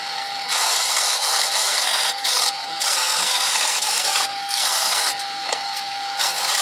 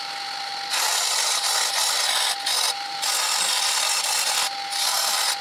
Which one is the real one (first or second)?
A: second